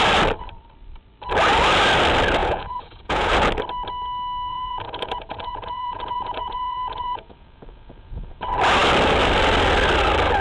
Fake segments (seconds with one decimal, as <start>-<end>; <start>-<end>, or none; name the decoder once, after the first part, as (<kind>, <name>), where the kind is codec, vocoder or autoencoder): 2.4-3.3 (vocoder, Vocos); 4.5-8.4